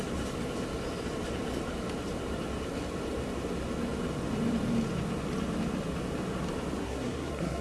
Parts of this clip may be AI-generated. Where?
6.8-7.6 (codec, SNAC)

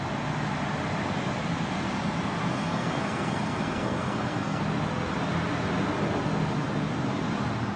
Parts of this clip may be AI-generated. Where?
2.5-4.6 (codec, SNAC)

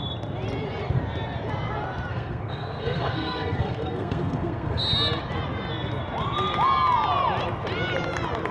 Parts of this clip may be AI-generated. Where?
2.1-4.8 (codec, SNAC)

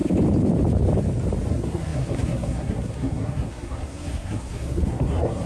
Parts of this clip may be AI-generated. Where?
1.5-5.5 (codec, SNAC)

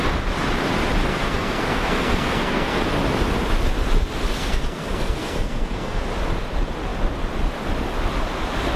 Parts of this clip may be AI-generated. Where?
1.0-2.8 (codec, SNAC); 4.3-6.0